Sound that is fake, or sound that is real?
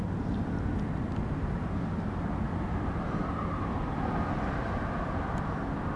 real